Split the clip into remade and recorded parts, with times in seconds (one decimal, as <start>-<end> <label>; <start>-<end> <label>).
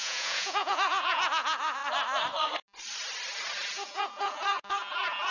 0.0-1.8 remade; 1.8-3.7 recorded; 3.7-5.3 remade